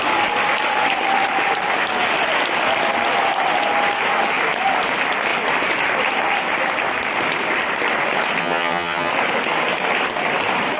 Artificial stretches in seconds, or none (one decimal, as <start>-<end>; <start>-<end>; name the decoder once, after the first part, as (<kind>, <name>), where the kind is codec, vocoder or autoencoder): 8.4-9.1 (vocoder, HiFi-GAN)